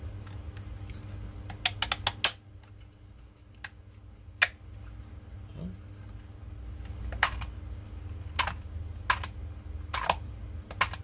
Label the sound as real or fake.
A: real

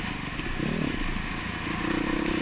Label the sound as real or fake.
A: real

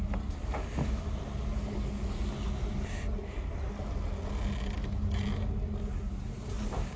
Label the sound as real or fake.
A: real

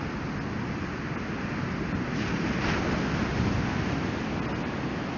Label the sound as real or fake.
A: real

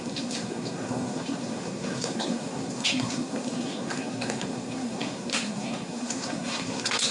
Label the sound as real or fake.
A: fake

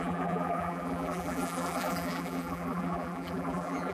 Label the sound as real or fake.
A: fake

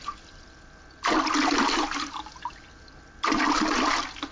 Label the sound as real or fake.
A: real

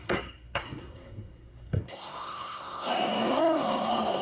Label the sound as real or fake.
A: fake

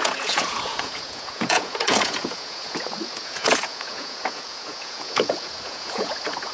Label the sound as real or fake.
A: fake